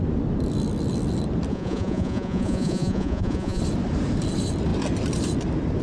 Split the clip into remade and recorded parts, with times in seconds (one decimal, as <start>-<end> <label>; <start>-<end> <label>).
0.0-1.5 recorded; 1.5-3.6 remade; 3.6-5.8 recorded